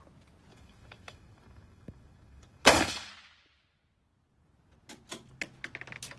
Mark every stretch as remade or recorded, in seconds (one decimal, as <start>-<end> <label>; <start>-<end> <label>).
0.0-0.5 recorded; 0.5-3.1 remade; 3.1-6.2 recorded

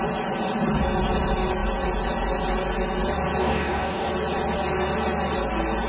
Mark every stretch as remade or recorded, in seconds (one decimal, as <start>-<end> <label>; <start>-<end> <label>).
0.0-3.4 recorded; 3.4-4.1 remade; 4.1-5.9 recorded

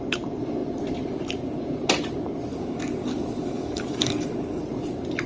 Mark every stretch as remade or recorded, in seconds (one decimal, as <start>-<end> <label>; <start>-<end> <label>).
0.0-2.5 recorded; 2.5-4.6 remade; 4.6-5.3 recorded

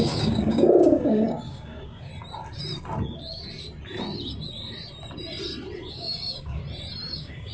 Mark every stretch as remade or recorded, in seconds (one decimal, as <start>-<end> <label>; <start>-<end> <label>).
0.0-2.1 remade; 2.1-5.9 recorded; 5.9-6.6 remade; 6.6-7.1 recorded; 7.1-7.5 remade

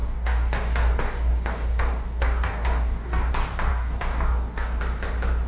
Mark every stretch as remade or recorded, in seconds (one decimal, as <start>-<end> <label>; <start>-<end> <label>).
0.0-3.3 remade; 3.3-3.7 recorded; 3.7-4.8 remade; 4.8-5.5 recorded

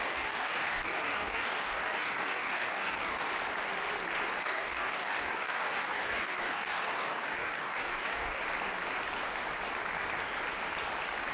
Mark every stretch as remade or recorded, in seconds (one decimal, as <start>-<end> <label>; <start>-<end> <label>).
0.0-3.3 remade; 3.3-4.4 recorded; 4.4-8.4 remade; 8.4-11.3 recorded

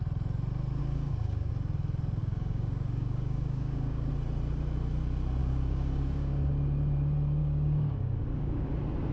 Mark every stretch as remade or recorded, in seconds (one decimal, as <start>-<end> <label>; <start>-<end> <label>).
0.0-0.8 recorded; 0.8-1.5 remade; 1.5-2.2 recorded; 2.2-4.1 remade; 4.1-5.4 recorded; 5.4-6.5 remade; 6.5-7.4 recorded; 7.4-8.7 remade; 8.7-9.1 recorded